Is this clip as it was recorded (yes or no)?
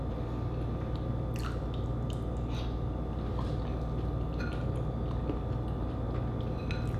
yes